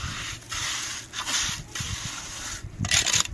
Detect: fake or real real